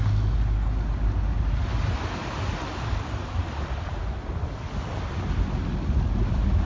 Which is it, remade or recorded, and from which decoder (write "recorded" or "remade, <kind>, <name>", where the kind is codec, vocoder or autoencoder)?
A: recorded